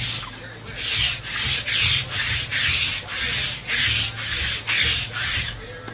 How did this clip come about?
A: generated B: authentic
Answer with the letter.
B